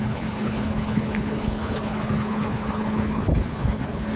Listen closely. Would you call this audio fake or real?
fake